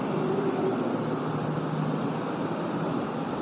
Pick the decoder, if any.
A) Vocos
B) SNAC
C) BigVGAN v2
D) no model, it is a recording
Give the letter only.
C